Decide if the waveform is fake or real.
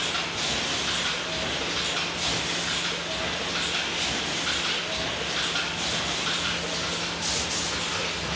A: real